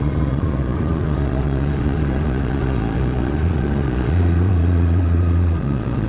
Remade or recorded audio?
remade